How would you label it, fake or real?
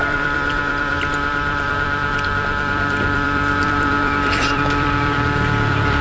fake